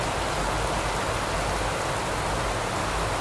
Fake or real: real